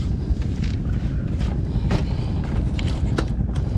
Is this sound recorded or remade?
recorded